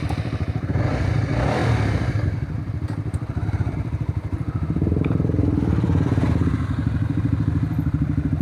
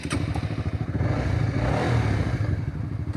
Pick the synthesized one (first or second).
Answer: first